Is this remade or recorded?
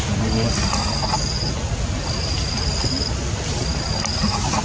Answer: recorded